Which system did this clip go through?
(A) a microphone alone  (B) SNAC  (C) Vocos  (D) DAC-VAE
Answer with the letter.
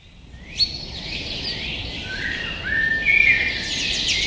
A